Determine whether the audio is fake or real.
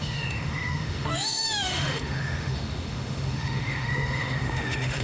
fake